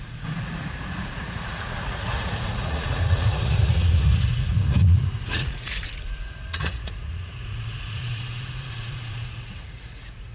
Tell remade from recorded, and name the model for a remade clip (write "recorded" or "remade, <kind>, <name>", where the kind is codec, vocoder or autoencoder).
remade, vocoder, Vocos